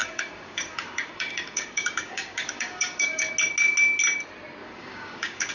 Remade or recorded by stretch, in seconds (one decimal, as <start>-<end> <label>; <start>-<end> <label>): 0.0-3.3 remade; 3.3-4.6 recorded; 4.6-5.5 remade

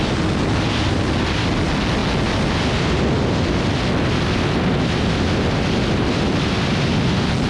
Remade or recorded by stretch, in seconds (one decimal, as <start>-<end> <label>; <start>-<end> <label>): 0.0-7.5 recorded

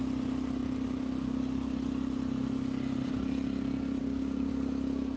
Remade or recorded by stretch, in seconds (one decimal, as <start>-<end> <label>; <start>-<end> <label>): 0.0-4.0 recorded; 4.0-4.5 remade; 4.5-5.2 recorded

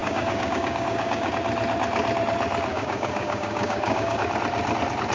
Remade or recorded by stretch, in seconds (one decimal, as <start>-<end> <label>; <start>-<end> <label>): 0.0-1.3 remade; 1.3-2.7 recorded; 2.7-4.2 remade; 4.2-5.1 recorded

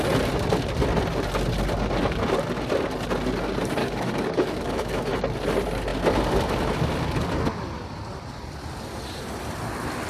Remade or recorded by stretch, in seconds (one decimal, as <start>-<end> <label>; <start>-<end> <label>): 0.0-3.8 recorded; 3.8-5.1 remade; 5.1-10.1 recorded